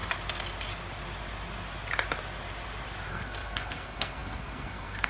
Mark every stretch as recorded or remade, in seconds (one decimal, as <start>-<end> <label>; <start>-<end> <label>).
0.0-3.1 recorded; 3.1-5.1 remade